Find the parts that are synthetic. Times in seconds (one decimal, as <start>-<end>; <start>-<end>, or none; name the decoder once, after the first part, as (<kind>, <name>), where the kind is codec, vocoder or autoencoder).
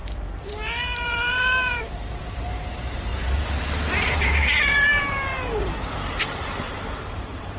0.0-7.6 (vocoder, BigVGAN v2)